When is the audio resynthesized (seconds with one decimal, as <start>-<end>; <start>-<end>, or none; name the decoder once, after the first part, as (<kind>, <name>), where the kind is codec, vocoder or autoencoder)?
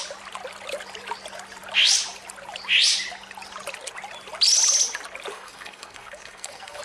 5.3-6.8 (codec, SNAC)